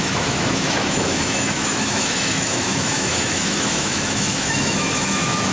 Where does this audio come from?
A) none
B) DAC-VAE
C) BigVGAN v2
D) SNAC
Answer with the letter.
B